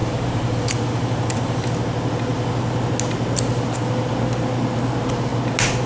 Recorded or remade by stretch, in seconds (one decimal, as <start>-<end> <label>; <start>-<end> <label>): 0.0-1.7 remade; 1.7-5.9 recorded